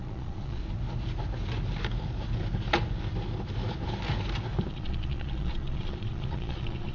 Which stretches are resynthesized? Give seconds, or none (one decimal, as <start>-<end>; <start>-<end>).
0.0-0.6; 4.7-6.9